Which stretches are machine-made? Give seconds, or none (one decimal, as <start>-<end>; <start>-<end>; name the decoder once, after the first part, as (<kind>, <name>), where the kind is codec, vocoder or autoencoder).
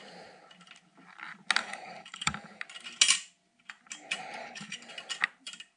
1.6-2.6 (codec, DAC); 4.4-4.9